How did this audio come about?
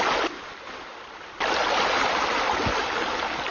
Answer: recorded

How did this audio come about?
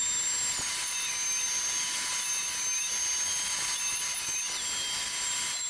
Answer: recorded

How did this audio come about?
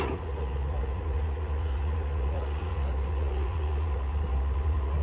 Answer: remade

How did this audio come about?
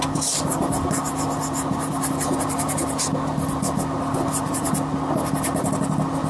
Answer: recorded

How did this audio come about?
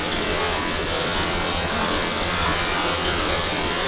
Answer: remade